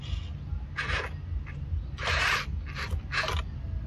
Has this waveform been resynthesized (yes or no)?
no